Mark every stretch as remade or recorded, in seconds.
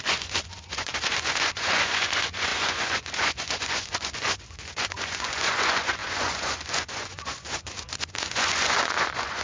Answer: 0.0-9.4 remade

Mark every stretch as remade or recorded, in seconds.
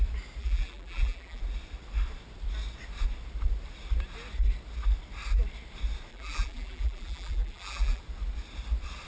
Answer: 0.0-0.4 recorded; 0.4-1.4 remade; 1.4-6.1 recorded; 6.1-8.0 remade; 8.0-9.1 recorded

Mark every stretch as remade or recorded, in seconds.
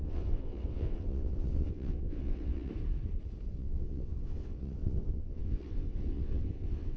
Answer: 0.0-2.7 remade; 2.7-3.5 recorded; 3.5-7.0 remade